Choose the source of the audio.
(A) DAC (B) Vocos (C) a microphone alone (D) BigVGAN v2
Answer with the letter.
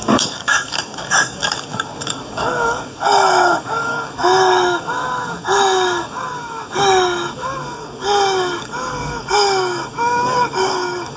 A